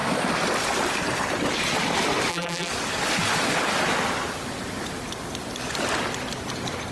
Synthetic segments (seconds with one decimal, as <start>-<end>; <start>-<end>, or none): 2.3-2.7